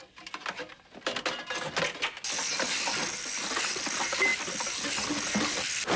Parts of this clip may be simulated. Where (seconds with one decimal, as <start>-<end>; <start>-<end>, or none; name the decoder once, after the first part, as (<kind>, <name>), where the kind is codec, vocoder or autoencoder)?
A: none